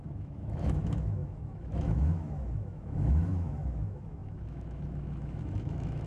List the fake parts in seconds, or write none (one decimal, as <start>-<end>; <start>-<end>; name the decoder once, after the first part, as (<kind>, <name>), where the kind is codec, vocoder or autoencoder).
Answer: 0.0-6.1 (autoencoder, DAC-VAE)